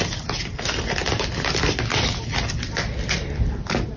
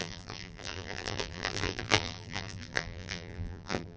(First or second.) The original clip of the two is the first